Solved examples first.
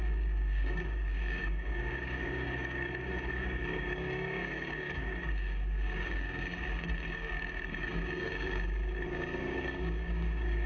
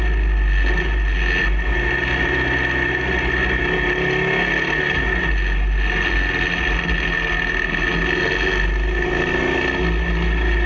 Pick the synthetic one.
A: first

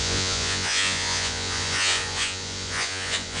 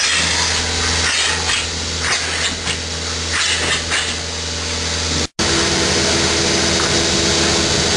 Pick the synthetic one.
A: first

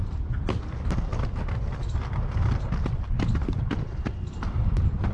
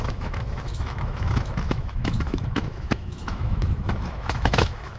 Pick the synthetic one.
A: second